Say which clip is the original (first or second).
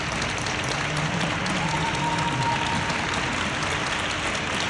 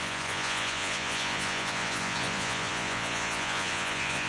first